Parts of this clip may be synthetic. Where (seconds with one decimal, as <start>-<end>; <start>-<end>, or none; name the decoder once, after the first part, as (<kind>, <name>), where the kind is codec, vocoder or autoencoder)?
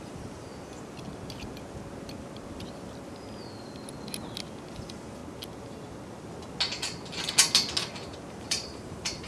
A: 0.0-0.5 (vocoder, BigVGAN v2); 4.7-5.2; 8.3-9.3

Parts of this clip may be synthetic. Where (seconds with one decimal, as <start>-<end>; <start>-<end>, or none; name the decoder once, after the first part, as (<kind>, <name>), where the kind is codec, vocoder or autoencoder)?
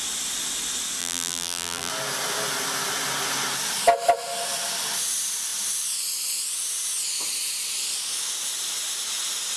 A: 1.0-1.9 (vocoder, BigVGAN v2)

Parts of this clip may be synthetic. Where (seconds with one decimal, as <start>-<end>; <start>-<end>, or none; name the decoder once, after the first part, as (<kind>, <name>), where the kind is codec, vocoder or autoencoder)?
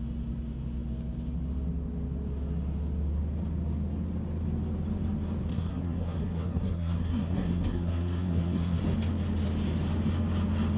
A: 5.5-8.8 (codec, SNAC)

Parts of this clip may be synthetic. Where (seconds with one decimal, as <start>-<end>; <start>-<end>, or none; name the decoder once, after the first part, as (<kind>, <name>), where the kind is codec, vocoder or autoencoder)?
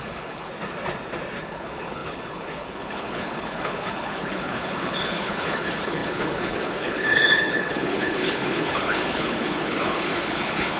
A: 0.0-0.5 (codec, HILCodec); 1.4-10.8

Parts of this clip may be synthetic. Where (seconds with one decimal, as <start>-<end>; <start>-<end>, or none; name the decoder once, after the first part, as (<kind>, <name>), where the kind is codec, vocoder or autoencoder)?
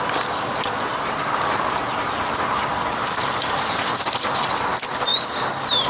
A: 5.1-5.9 (vocoder, BigVGAN v2)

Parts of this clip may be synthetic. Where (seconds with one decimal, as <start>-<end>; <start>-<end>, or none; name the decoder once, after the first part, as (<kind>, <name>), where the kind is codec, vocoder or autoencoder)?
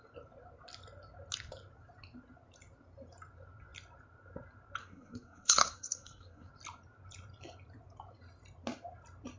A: 4.8-6.5 (codec, SNAC)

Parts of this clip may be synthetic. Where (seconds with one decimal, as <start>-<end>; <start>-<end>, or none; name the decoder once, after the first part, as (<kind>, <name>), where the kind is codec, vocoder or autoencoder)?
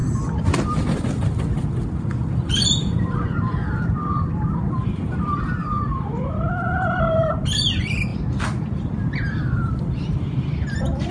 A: 0.0-11.1 (vocoder, BigVGAN v2)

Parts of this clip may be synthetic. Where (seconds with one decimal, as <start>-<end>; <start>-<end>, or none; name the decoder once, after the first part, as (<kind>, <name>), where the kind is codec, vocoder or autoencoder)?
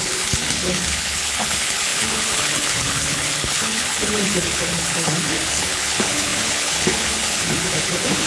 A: 0.0-8.3 (codec, HILCodec)